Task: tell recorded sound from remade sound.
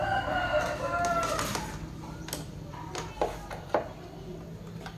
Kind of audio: recorded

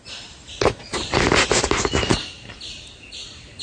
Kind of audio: recorded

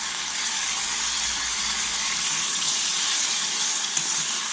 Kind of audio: remade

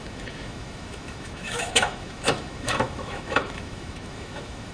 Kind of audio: remade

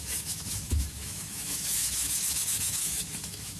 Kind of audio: remade